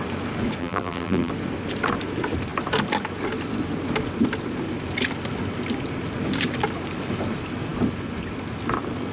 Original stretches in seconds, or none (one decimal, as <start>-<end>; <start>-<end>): 0.0-0.6; 1.3-9.1